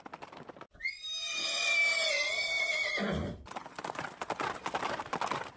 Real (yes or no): yes